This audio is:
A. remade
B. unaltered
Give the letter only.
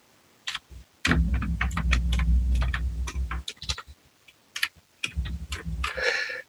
B